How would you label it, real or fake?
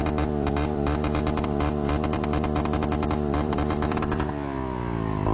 fake